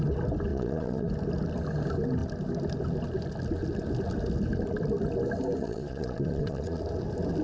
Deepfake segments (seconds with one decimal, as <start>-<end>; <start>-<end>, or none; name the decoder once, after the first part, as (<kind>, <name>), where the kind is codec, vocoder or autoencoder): 0.5-1.1 (vocoder, Vocos); 5.6-6.8